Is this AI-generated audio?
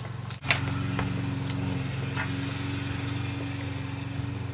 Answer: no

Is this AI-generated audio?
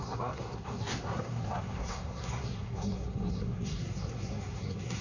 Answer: yes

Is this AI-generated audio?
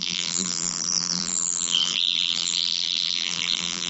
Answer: yes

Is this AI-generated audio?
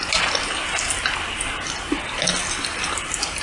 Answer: no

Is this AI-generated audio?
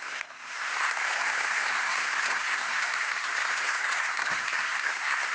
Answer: yes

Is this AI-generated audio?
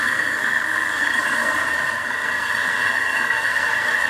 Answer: yes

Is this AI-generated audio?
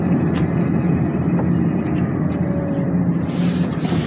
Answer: no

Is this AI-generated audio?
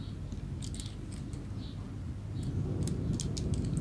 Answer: no